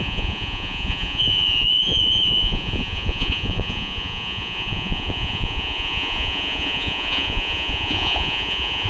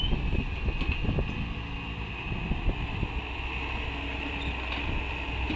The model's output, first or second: first